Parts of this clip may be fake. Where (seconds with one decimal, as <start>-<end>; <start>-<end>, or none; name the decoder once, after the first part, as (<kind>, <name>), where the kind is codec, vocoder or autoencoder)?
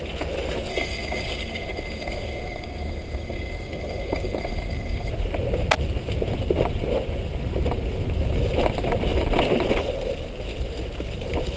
0.7-5.1 (codec, DAC)